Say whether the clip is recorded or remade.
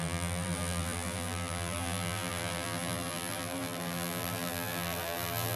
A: remade